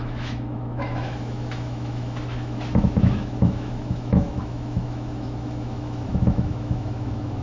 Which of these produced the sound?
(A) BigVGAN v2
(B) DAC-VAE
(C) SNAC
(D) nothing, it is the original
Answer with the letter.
B